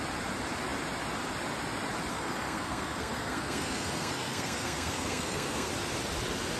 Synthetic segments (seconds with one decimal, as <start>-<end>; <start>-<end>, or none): 2.1-5.7